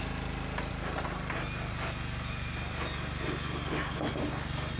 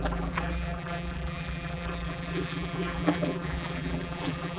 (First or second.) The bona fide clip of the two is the first